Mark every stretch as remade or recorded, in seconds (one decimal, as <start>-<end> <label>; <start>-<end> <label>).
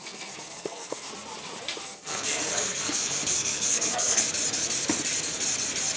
0.0-1.1 remade; 1.1-1.8 recorded; 1.8-4.3 remade; 4.3-6.0 recorded